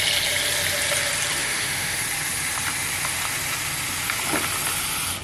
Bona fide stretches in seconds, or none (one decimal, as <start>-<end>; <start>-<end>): 0.0-1.4; 2.0-5.2